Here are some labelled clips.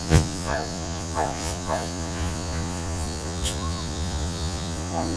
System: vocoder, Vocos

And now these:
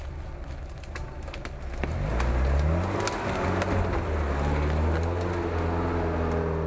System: none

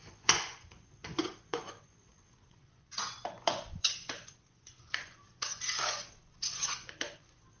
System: vocoder, Vocos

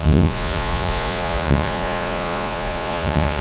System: vocoder, Vocos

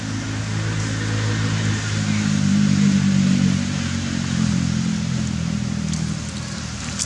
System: none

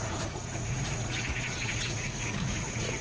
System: vocoder, Vocos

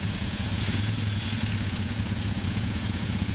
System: vocoder, Vocos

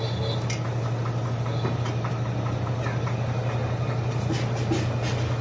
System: none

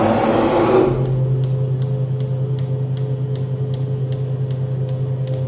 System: none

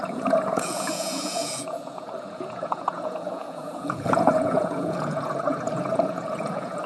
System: vocoder, Vocos